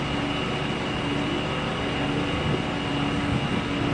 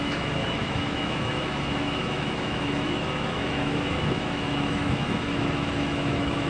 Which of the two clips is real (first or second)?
first